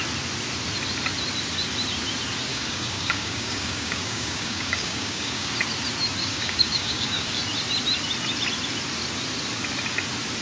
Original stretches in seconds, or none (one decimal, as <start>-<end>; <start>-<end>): 0.0-2.5; 5.5-6.2; 7.4-10.4